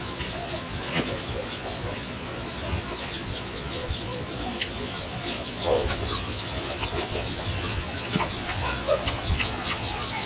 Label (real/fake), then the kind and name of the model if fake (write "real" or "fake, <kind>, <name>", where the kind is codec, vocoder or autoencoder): fake, vocoder, Vocos